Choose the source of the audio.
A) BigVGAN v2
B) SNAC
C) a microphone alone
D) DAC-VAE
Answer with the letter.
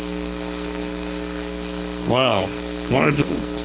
B